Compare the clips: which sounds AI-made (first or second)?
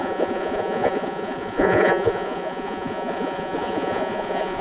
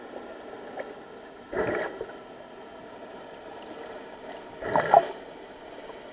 first